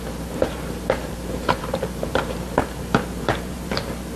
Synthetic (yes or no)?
yes